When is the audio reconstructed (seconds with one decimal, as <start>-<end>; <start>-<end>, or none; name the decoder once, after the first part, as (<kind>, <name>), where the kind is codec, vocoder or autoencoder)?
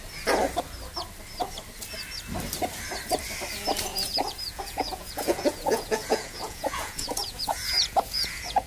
3.9-8.7 (vocoder, Vocos)